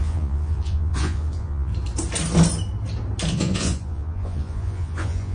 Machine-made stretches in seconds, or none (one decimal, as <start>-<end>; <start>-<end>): 0.0-1.7; 3.3-5.3